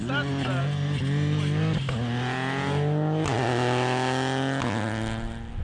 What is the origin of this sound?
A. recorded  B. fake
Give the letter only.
A